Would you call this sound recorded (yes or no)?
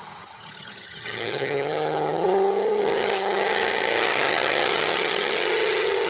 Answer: no